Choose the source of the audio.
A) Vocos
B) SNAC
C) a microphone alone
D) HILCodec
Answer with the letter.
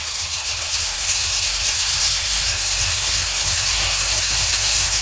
B